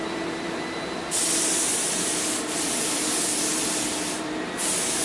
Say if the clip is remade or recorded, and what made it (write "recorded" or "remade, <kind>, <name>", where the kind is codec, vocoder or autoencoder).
remade, vocoder, BigVGAN v2